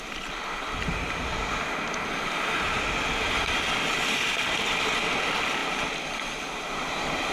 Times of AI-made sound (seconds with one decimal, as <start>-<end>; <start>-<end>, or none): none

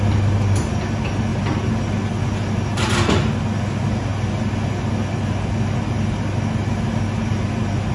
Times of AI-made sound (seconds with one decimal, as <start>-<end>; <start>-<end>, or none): none

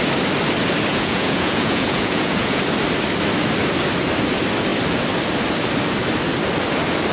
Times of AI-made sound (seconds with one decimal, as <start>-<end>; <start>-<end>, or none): 0.9-2.6

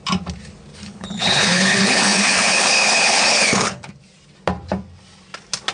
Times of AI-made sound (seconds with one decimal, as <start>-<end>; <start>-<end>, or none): 0.7-3.9

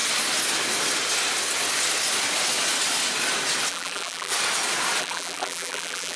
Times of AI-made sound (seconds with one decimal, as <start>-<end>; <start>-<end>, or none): 3.7-4.3; 5.0-6.2

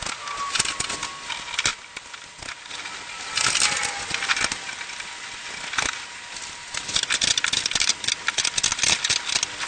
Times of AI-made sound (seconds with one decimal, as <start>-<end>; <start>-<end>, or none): none